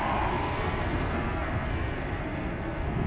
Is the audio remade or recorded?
remade